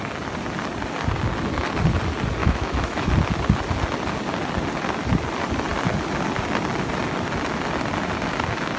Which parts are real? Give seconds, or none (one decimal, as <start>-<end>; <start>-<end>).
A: 0.0-2.4; 3.1-8.8